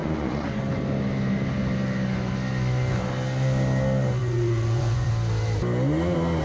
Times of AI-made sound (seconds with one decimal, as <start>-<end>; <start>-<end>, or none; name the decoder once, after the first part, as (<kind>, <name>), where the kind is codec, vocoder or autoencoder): 0.0-0.6 (vocoder, Vocos); 4.2-5.1